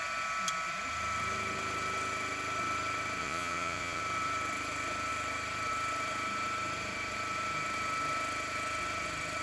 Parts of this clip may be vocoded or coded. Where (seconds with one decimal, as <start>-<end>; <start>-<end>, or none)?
3.2-4.0